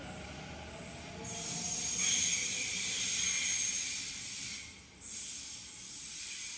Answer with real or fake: real